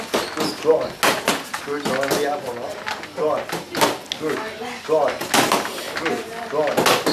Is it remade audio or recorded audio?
recorded